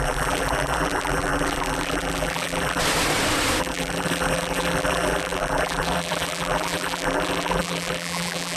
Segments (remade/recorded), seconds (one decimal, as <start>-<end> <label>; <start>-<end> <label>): 0.0-2.8 remade; 2.8-3.6 recorded; 3.6-8.6 remade

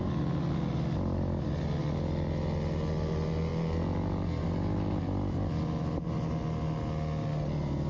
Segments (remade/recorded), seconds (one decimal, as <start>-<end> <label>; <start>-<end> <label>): 0.0-7.9 recorded

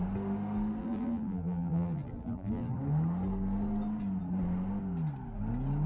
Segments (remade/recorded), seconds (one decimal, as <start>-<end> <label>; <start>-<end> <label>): 0.0-0.8 recorded; 0.8-2.8 remade; 2.8-5.9 recorded

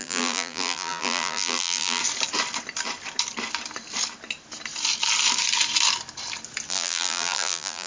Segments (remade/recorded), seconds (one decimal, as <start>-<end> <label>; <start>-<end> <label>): 0.0-2.0 remade; 2.0-6.7 recorded; 6.7-7.9 remade

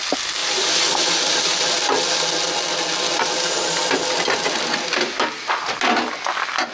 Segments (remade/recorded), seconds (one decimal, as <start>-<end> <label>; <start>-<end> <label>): 0.0-6.7 recorded

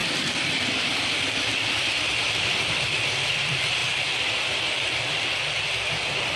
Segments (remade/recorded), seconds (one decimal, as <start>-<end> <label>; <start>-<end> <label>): 0.0-3.2 remade; 3.2-3.8 recorded; 3.8-5.0 remade; 5.0-6.4 recorded

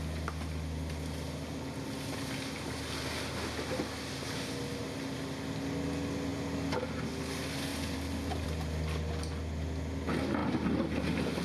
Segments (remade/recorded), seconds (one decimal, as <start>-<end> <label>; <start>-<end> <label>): 0.0-7.7 recorded; 7.7-8.6 remade; 8.6-11.4 recorded